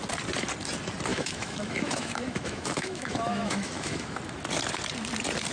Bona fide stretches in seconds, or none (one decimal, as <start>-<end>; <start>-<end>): 0.0-1.1; 4.2-5.5